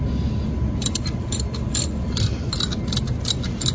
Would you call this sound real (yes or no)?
yes